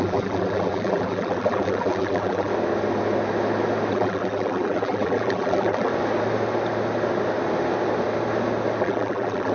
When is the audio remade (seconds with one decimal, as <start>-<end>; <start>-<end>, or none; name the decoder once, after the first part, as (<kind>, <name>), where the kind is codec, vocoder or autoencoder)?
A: 0.0-2.5 (vocoder, BigVGAN v2); 3.9-5.9; 8.8-9.5

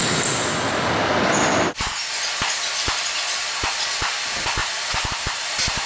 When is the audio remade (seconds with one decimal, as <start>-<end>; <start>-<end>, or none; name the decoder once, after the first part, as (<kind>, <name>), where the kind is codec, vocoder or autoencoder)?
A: 2.3-3.8 (vocoder, BigVGAN v2); 4.6-5.9

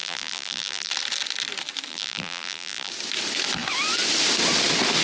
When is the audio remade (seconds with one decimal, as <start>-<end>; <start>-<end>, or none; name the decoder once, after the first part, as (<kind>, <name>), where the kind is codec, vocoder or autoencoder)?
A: 0.0-0.9 (vocoder, BigVGAN v2); 1.9-2.9

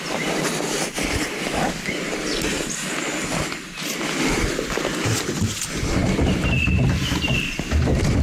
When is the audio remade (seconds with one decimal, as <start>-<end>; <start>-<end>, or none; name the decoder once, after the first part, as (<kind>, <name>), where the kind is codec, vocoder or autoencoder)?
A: none